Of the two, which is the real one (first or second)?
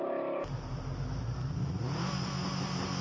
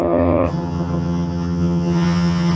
first